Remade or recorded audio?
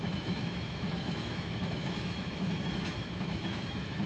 remade